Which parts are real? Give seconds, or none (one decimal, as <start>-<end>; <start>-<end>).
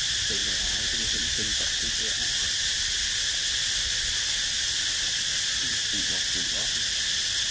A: 0.0-7.5